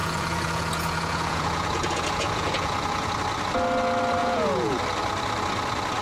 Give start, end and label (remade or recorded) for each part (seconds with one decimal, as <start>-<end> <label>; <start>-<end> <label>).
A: 0.0-3.1 remade; 3.1-4.2 recorded; 4.2-4.8 remade; 4.8-6.0 recorded